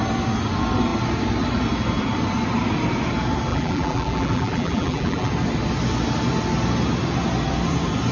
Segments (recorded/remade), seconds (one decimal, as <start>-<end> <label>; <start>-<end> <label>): 0.0-3.5 recorded; 3.5-5.3 remade; 5.3-8.1 recorded